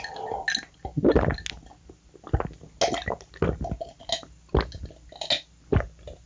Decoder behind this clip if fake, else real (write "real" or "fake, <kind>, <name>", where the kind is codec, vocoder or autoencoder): real